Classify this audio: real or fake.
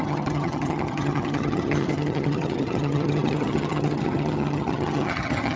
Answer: fake